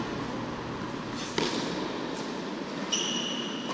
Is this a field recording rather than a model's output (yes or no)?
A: yes